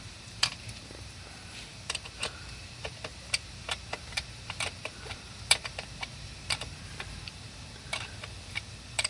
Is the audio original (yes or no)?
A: no